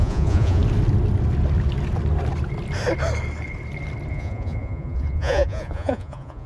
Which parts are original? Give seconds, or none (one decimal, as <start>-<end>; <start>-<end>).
0.6-4.1